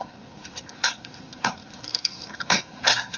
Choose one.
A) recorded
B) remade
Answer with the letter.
B